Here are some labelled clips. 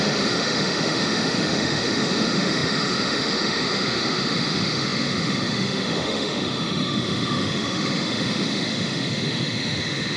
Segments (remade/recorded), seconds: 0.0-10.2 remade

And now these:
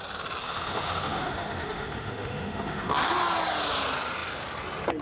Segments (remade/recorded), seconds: 0.0-0.4 recorded; 0.4-2.9 remade; 2.9-5.0 recorded

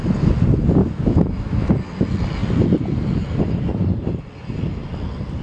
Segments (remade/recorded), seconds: 0.0-0.8 recorded; 0.8-1.7 remade; 1.7-5.4 recorded